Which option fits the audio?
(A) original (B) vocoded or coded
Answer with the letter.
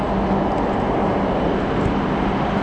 A